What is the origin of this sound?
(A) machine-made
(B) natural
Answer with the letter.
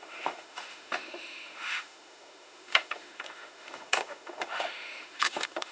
A